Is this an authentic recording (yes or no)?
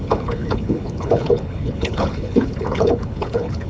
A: no